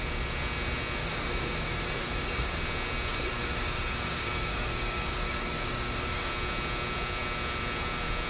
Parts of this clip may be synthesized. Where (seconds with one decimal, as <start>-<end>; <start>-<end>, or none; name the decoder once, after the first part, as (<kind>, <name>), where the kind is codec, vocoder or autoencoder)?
1.0-2.6 (codec, DAC); 3.1-6.3